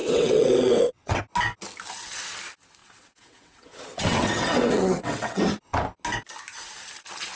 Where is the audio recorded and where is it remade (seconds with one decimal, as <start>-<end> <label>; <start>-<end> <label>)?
0.0-1.2 remade; 1.2-2.8 recorded; 2.8-5.4 remade; 5.4-7.4 recorded

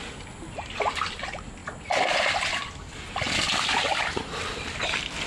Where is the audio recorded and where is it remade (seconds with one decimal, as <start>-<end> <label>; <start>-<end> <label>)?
0.0-5.3 recorded

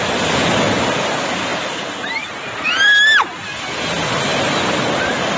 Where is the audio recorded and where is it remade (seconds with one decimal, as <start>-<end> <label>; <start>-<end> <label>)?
0.0-5.4 recorded

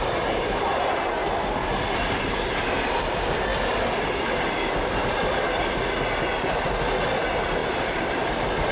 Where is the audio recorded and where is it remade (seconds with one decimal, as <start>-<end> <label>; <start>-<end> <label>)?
0.0-7.6 recorded; 7.6-8.7 remade

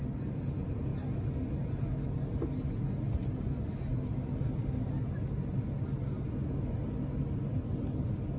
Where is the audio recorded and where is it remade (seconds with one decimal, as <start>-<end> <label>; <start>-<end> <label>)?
0.0-8.4 recorded

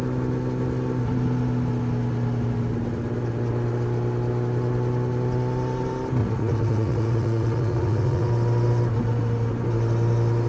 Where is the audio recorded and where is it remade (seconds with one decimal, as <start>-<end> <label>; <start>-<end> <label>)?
0.0-6.2 recorded; 6.2-8.3 remade; 8.3-10.5 recorded

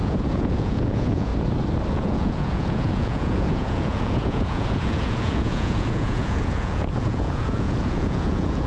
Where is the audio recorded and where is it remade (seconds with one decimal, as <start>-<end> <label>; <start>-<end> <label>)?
0.0-1.3 remade; 1.3-1.9 recorded; 1.9-8.7 remade